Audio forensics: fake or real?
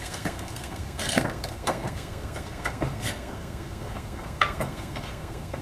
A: fake